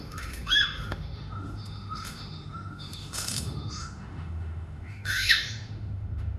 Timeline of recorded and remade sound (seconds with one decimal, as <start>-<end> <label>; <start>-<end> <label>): 0.0-6.4 remade